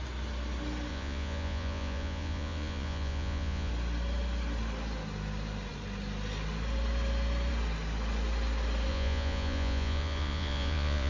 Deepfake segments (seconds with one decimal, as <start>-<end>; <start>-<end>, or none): 0.9-3.7; 8.9-11.1